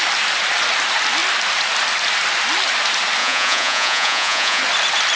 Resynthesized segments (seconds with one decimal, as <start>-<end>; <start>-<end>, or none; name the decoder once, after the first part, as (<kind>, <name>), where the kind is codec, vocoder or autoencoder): 3.2-4.6 (vocoder, Vocos)